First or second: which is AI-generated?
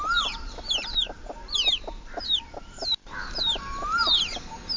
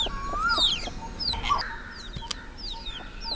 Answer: first